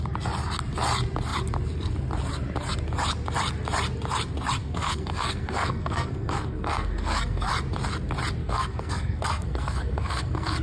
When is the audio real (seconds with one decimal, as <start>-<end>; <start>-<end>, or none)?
0.0-4.6; 7.5-8.4